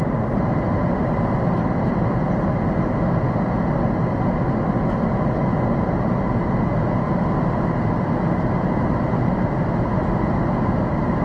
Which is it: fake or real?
real